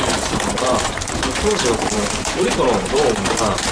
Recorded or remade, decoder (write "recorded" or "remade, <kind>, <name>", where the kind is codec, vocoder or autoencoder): remade, vocoder, BigVGAN v2